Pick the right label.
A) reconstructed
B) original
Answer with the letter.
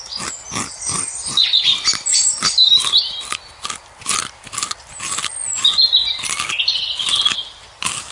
B